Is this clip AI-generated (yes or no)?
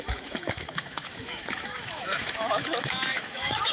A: yes